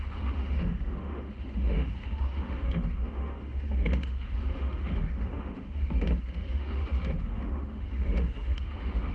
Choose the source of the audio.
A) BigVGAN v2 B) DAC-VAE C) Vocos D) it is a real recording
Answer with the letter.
B